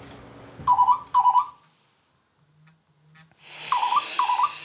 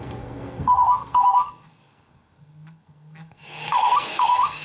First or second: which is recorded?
first